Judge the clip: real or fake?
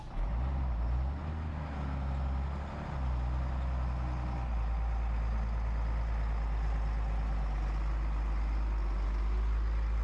real